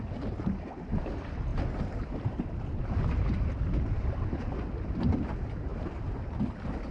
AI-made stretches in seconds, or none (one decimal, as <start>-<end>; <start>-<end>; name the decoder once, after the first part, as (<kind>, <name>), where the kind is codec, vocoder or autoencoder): none